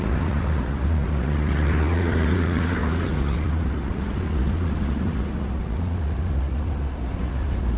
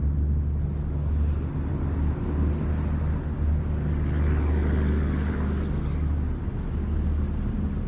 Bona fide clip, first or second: second